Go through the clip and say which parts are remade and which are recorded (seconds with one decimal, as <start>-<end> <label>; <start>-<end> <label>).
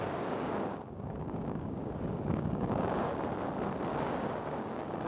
0.0-3.1 remade; 3.1-3.9 recorded; 3.9-5.1 remade